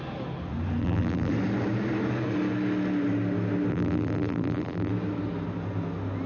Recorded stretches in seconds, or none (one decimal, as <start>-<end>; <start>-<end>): 0.0-0.8; 1.3-3.7; 4.9-6.3